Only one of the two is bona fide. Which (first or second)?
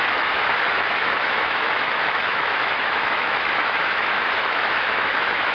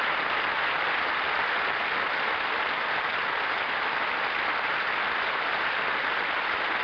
second